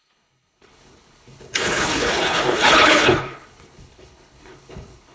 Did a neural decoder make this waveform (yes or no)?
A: yes